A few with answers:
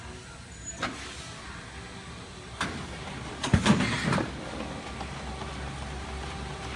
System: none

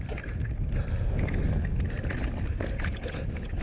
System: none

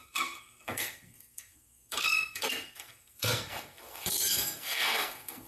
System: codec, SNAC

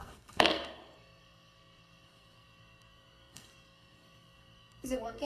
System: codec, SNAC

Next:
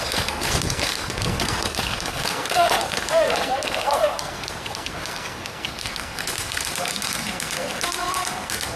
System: codec, SNAC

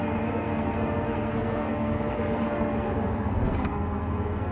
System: codec, SNAC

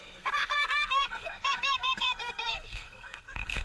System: codec, SNAC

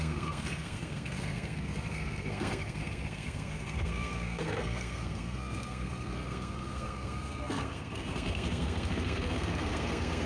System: codec, SNAC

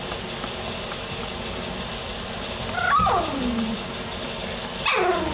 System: none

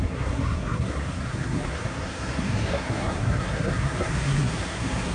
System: codec, SNAC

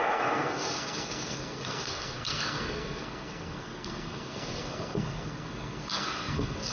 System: codec, SNAC